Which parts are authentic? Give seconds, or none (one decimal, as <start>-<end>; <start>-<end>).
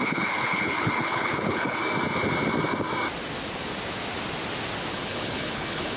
1.8-4.9